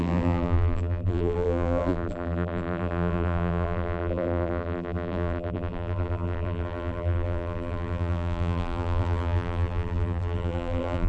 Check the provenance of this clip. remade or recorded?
remade